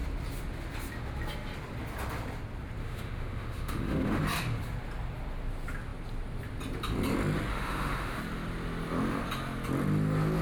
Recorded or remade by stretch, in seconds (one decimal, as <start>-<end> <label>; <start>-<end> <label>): 0.0-2.8 recorded; 2.8-4.2 remade; 4.2-7.5 recorded; 7.5-8.2 remade; 8.2-10.4 recorded